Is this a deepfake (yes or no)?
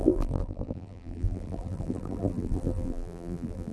yes